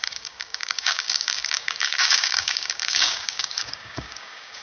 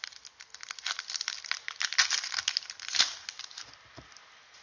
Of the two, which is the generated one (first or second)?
first